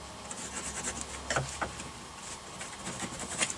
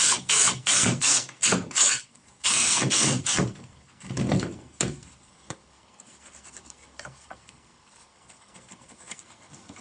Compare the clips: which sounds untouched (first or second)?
first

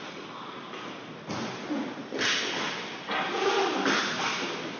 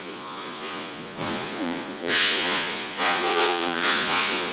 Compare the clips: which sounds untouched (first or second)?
first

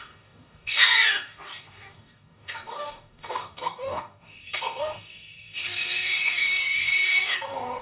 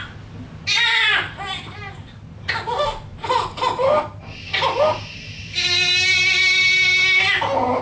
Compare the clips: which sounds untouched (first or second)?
second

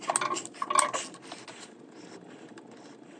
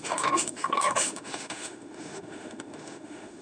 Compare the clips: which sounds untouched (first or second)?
first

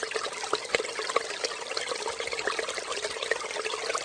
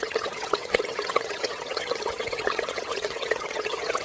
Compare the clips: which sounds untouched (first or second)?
first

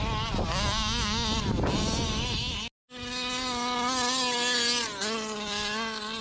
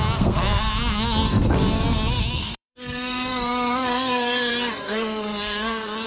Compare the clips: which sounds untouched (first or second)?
first